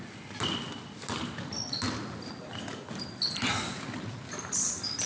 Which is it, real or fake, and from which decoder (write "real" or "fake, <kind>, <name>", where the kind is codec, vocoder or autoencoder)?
real